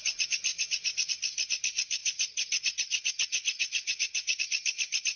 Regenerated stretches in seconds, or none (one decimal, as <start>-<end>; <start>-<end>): 0.5-1.1; 2.0-4.4